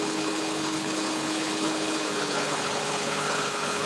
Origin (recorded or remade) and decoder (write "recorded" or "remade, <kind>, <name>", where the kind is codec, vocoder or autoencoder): remade, codec, HILCodec